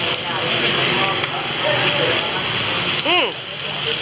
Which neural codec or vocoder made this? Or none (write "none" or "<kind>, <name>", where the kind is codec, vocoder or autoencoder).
none